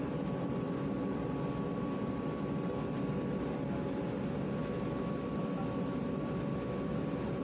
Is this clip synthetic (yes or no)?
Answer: no